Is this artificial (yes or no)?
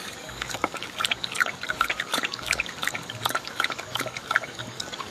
yes